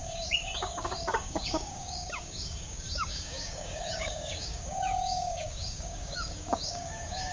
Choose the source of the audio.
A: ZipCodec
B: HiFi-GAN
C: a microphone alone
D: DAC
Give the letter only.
D